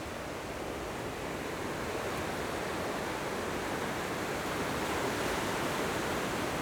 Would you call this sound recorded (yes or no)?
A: yes